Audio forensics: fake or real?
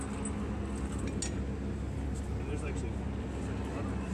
real